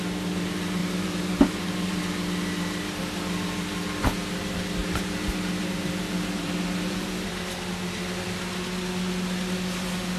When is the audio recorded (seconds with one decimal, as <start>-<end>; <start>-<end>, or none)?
0.0-0.8; 2.0-4.8; 7.3-10.2